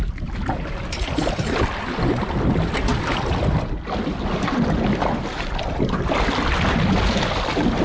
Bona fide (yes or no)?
yes